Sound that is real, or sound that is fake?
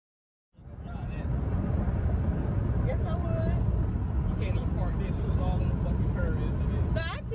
real